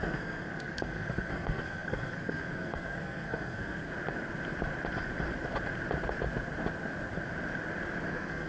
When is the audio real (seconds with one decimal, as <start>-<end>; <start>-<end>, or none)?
3.9-8.1